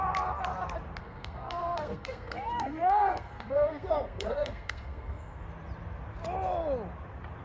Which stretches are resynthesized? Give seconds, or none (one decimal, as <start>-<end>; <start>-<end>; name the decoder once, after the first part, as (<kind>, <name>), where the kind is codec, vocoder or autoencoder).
1.0-5.4 (codec, SNAC)